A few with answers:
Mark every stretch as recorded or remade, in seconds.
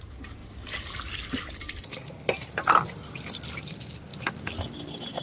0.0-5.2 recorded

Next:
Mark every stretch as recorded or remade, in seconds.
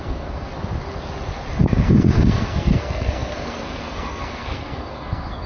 0.0-0.5 remade; 0.5-1.6 recorded; 1.6-5.5 remade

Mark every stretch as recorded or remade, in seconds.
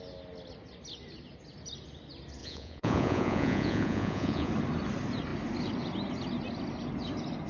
0.0-2.4 recorded; 2.4-4.5 remade; 4.5-7.5 recorded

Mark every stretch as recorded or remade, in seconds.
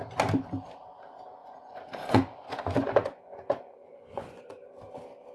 0.0-1.4 recorded; 1.4-4.6 remade; 4.6-5.3 recorded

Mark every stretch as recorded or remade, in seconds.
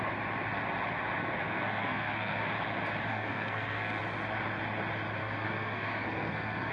0.0-1.2 recorded; 1.2-2.5 remade; 2.5-3.1 recorded; 3.1-4.0 remade; 4.0-5.2 recorded; 5.2-6.7 remade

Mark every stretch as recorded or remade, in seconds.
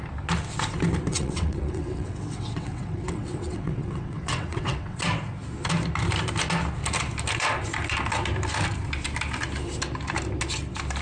0.0-1.1 recorded; 1.1-5.0 remade; 5.0-11.0 recorded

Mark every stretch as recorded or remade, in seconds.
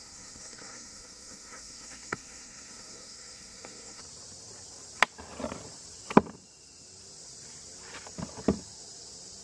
0.0-4.0 remade; 4.0-9.4 recorded